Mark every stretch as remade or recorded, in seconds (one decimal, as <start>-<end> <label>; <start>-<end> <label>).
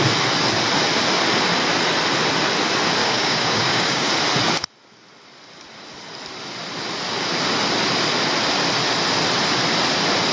0.0-3.0 recorded; 3.0-4.1 remade; 4.1-10.3 recorded